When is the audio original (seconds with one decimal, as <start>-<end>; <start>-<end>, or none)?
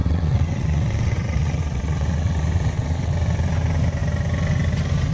3.1-5.1